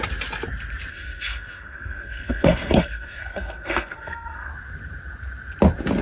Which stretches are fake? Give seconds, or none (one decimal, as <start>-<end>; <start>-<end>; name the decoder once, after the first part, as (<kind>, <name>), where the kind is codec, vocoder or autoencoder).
0.9-4.5 (codec, SNAC)